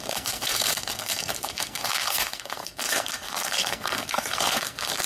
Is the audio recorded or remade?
remade